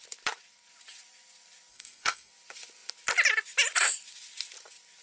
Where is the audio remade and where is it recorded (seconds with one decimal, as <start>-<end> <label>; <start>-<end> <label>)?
0.0-1.7 recorded; 1.7-2.3 remade; 2.3-5.0 recorded